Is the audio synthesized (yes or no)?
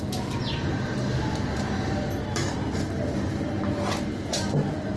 yes